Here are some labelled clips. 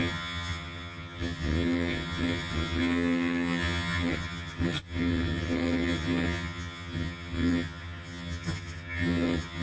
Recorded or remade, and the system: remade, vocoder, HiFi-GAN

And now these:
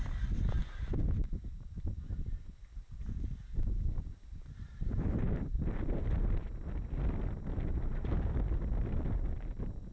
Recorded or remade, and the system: recorded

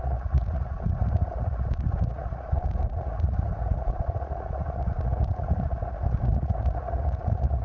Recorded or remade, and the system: remade, vocoder, Vocos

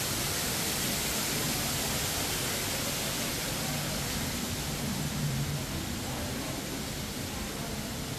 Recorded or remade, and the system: recorded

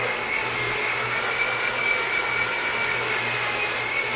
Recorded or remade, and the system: recorded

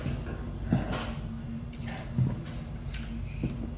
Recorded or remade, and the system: recorded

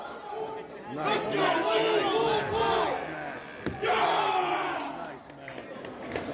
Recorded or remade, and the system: recorded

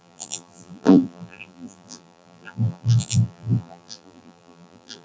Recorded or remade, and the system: remade, vocoder, BigVGAN v2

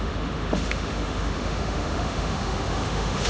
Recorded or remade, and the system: remade, autoencoder, DAC-VAE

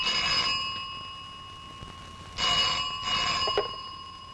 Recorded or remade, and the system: recorded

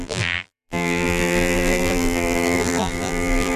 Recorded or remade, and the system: remade, vocoder, BigVGAN v2